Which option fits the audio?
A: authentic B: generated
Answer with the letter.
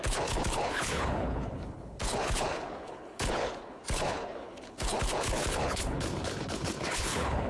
B